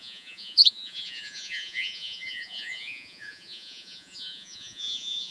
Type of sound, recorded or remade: remade